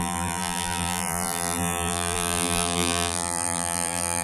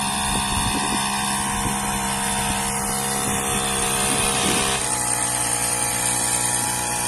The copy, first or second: first